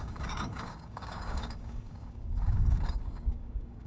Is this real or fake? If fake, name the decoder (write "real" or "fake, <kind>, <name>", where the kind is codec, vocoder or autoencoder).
fake, codec, DAC